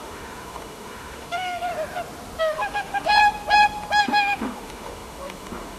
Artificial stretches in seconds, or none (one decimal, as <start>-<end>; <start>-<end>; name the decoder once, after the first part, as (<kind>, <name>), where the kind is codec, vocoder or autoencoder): 0.0-1.7 (autoencoder, DAC-VAE); 2.4-3.1; 4.0-5.8